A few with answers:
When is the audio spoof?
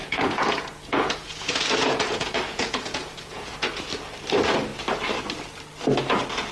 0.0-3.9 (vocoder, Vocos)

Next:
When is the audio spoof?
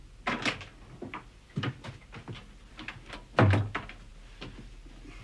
none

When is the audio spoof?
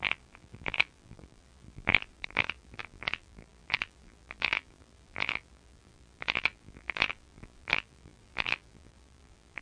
0.0-9.6 (vocoder, BigVGAN v2)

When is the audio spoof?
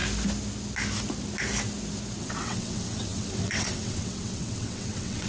2.2-5.3 (vocoder, WaveNeXt)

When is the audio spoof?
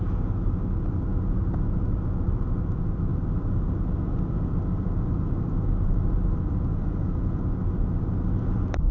6.7-7.4 (vocoder, Vocos)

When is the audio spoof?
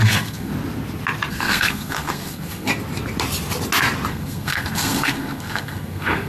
0.0-0.5 (codec, SNAC); 1.3-2.7; 4.1-6.3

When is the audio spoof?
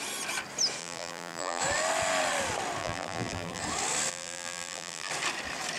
0.8-1.6 (vocoder, BigVGAN v2); 2.8-3.6; 4.1-5.1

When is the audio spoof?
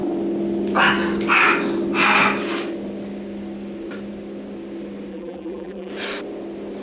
5.1-5.9 (vocoder, BigVGAN v2)